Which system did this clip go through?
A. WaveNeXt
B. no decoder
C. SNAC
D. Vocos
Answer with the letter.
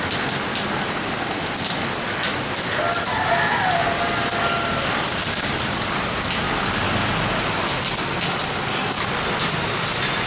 B